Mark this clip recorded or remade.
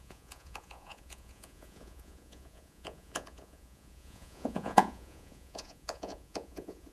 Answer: remade